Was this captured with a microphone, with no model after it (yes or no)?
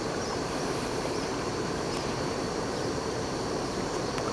no